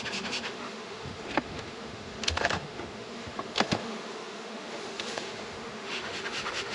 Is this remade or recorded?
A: remade